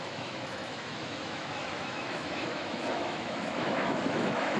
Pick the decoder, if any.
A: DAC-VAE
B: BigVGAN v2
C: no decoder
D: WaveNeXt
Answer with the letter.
A